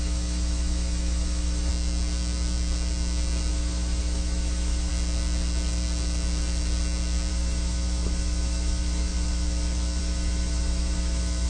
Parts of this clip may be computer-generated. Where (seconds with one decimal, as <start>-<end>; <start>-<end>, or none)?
0.0-1.7; 3.5-4.9; 7.3-11.5